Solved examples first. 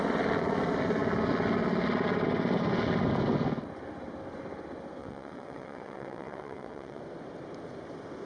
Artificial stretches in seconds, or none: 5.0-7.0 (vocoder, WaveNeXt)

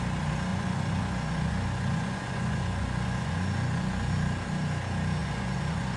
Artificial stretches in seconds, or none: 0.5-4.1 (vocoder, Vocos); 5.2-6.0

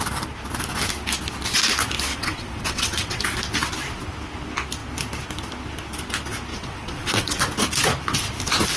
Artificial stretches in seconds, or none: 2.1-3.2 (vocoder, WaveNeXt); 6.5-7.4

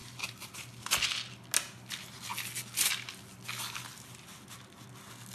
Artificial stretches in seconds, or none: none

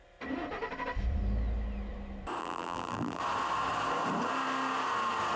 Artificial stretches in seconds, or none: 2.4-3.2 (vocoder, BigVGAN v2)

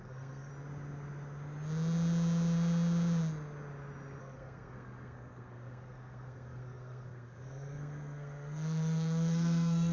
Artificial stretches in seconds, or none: 0.0-0.5 (codec, SNAC); 4.2-9.9

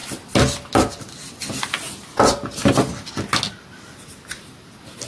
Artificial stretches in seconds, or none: none

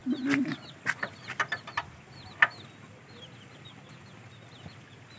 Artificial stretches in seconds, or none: none